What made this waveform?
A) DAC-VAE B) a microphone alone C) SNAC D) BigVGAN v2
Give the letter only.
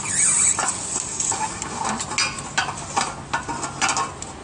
B